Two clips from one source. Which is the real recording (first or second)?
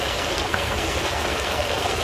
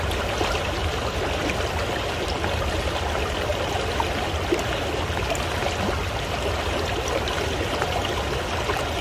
second